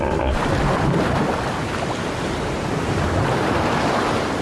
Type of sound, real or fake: real